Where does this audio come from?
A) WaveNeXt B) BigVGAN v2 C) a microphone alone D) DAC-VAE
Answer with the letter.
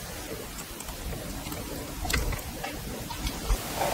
C